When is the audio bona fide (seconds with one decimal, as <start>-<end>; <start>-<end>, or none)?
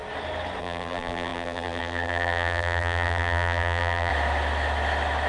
0.0-0.6; 4.1-5.3